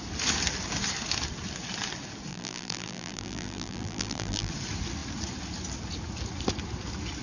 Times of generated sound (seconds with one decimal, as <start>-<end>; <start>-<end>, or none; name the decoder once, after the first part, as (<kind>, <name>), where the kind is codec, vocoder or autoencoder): 2.3-4.5 (vocoder, BigVGAN v2)